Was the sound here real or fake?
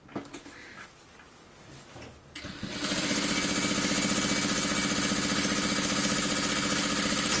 real